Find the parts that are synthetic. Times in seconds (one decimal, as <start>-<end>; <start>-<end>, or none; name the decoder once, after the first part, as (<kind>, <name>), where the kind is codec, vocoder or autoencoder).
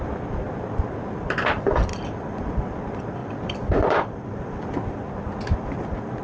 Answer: 1.9-2.5 (vocoder, BigVGAN v2); 3.2-4.3